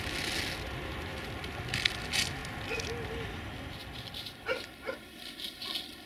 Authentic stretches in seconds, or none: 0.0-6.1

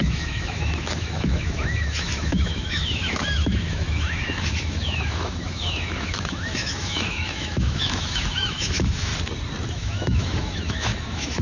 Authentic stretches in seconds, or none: 9.1-9.7

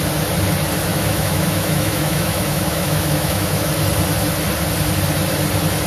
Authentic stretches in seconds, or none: 0.0-0.9; 3.7-5.9

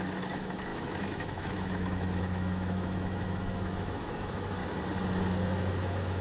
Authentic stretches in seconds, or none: 4.6-5.7

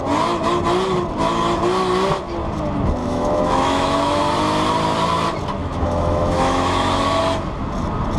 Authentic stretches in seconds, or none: 0.0-3.0; 4.2-5.6; 7.2-8.2

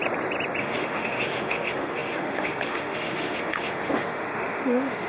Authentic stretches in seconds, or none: 0.0-0.6

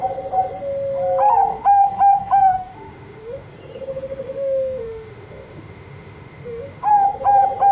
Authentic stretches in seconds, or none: 0.0-1.5; 3.5-3.9; 6.9-7.7